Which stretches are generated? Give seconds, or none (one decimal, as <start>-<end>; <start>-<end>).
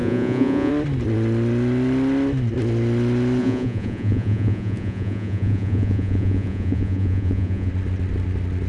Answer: 0.0-0.7; 3.4-7.7